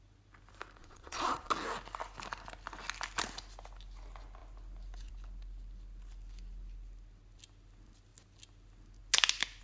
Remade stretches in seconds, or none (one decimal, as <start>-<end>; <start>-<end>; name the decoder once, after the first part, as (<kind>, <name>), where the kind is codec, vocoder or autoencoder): 0.8-1.5 (vocoder, Vocos)